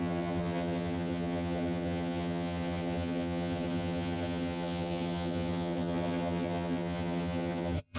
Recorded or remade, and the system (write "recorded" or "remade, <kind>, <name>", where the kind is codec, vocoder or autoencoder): remade, vocoder, HiFi-GAN